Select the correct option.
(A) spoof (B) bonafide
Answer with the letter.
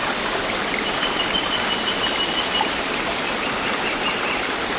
B